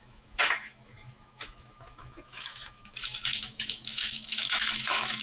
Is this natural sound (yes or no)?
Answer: no